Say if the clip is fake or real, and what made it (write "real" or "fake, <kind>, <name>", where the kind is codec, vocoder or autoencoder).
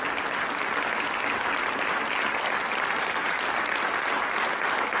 real